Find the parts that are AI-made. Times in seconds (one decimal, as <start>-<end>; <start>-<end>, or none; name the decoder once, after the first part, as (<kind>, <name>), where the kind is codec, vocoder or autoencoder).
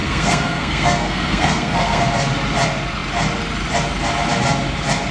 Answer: 0.0-2.0 (codec, SNAC)